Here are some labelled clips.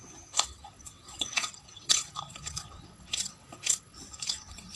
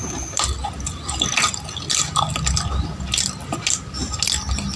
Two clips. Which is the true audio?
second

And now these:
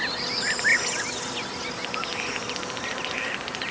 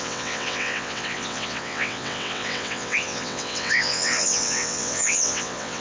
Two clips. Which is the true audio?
first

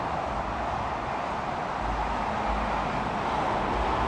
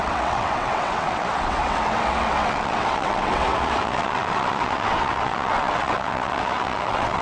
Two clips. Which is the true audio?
first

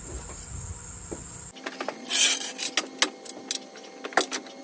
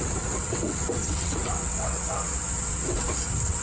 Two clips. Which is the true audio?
first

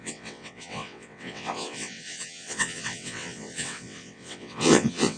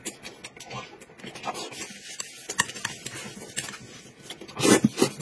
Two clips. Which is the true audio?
second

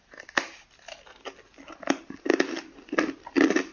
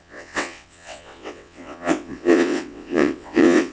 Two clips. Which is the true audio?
first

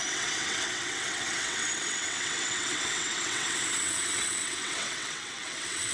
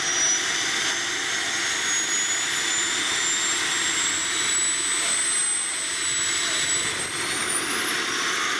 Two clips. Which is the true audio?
second